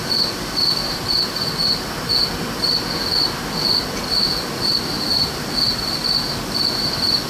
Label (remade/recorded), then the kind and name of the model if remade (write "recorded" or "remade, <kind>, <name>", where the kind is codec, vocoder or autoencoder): remade, vocoder, BigVGAN v2